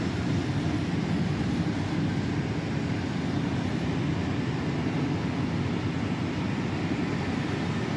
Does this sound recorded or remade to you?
recorded